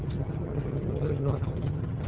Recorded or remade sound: remade